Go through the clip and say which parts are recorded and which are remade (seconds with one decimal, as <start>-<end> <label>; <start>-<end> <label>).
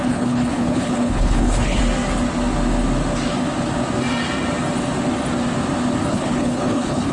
0.0-1.8 remade; 1.8-6.1 recorded; 6.1-7.1 remade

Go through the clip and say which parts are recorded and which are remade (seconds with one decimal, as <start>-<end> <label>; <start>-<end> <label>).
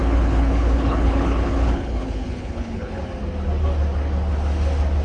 0.0-3.0 remade; 3.0-5.0 recorded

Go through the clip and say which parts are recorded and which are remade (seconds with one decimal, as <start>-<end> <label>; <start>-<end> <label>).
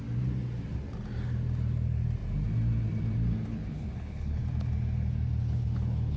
0.0-3.5 recorded; 3.5-4.4 remade; 4.4-5.4 recorded; 5.4-6.2 remade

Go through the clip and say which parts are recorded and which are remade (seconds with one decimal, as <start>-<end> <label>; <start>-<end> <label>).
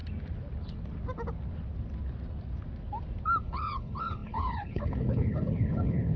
0.0-3.4 recorded; 3.4-6.2 remade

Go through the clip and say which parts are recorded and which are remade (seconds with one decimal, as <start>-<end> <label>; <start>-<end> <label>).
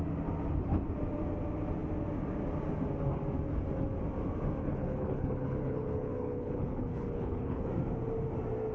0.0-4.6 recorded; 4.6-7.7 remade; 7.7-8.7 recorded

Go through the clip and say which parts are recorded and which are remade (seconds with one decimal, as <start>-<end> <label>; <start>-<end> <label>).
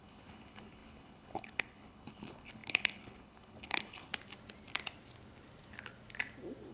0.0-4.1 remade; 4.1-6.7 recorded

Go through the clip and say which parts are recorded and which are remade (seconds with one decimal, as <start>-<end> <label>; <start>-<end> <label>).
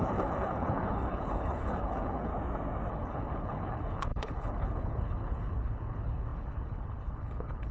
0.0-2.3 remade; 2.3-2.9 recorded; 2.9-7.7 remade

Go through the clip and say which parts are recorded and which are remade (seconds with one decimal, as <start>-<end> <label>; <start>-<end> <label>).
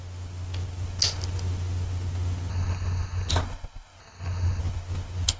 0.0-2.5 recorded; 2.5-3.3 remade; 3.3-4.0 recorded; 4.0-4.6 remade; 4.6-5.4 recorded